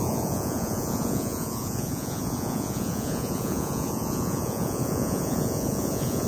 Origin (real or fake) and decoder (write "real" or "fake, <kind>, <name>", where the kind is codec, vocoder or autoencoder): fake, vocoder, Vocos